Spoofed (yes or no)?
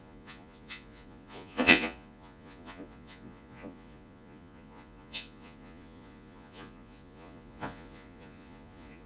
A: yes